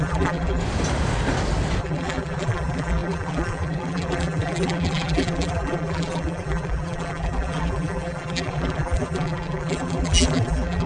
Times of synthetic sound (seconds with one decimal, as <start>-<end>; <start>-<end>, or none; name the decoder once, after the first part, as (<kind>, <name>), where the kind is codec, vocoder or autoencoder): 0.0-0.6 (vocoder, BigVGAN v2); 1.8-10.9